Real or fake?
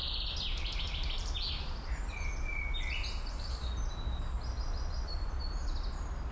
real